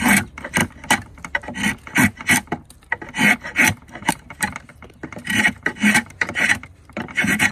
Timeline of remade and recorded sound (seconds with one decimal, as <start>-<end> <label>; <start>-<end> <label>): 0.0-0.6 remade; 0.6-4.1 recorded; 4.1-7.5 remade